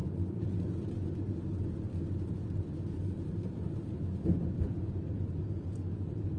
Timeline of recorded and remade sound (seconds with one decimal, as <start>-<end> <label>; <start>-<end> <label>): 0.0-6.4 recorded